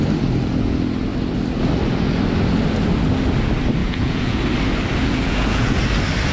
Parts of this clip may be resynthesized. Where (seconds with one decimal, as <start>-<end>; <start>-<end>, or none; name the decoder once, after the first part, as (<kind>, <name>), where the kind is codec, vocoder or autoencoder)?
3.8-4.4 (vocoder, Vocos); 5.0-5.8